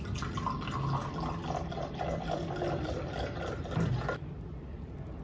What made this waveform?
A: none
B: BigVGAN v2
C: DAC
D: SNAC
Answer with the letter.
A